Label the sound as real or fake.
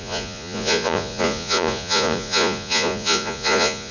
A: fake